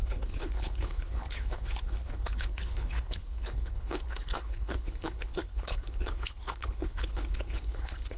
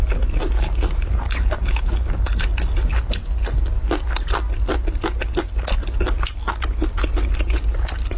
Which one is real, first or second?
second